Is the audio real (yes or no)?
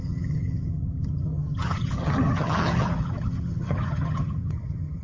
no